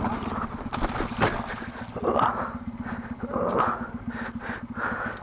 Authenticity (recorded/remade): recorded